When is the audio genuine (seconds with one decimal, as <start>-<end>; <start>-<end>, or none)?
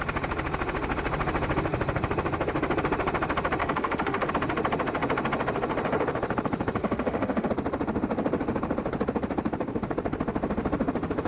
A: 0.0-3.6; 4.3-6.8; 7.5-11.3